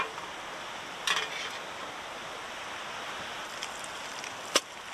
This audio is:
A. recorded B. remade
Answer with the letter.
A